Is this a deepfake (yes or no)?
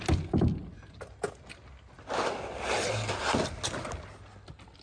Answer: no